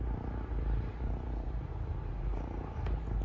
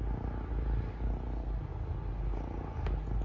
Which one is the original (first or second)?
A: second